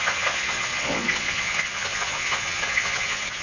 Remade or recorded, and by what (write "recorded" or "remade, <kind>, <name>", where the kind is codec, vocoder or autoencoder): remade, vocoder, Vocos